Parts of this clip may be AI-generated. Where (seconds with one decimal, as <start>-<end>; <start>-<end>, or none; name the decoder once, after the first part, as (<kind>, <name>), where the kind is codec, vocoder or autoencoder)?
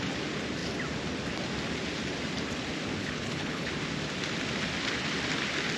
3.0-3.7 (codec, HILCodec)